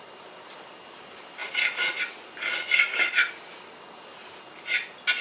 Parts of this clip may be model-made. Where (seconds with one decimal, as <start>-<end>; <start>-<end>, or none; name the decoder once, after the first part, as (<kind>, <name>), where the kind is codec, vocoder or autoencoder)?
none